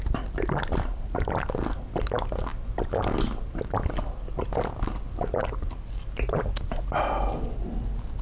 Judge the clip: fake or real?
real